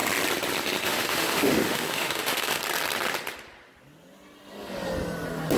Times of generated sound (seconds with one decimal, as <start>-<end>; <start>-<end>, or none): 0.8-2.6